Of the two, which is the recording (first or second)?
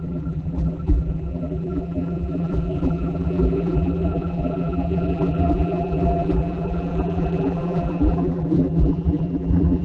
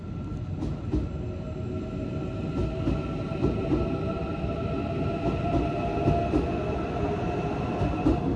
second